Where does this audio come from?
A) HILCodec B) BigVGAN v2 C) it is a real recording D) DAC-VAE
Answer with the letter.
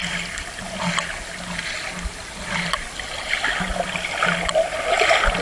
C